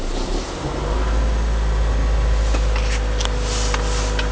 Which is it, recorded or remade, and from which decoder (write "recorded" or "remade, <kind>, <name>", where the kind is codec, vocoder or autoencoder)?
recorded